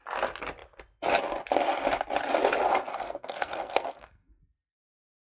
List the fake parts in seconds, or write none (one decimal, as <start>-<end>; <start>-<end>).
2.9-4.4

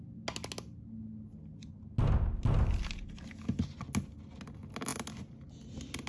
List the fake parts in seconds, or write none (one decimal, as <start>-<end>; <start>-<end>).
none